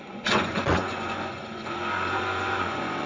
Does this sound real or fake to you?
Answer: fake